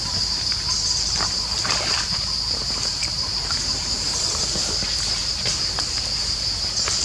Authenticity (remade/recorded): remade